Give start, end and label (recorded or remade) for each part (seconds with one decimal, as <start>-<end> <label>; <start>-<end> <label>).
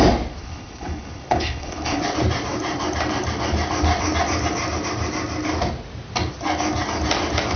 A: 0.0-0.4 recorded; 0.4-2.0 remade; 2.0-7.6 recorded